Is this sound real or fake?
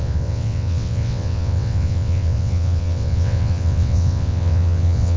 fake